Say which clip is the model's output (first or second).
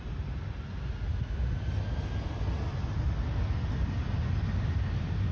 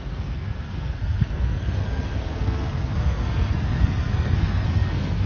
second